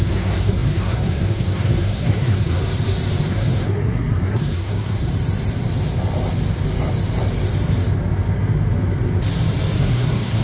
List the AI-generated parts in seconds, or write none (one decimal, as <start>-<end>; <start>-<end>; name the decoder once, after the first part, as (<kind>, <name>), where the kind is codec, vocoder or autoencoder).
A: 0.0-2.6 (codec, SNAC); 3.3-5.1; 9.8-10.4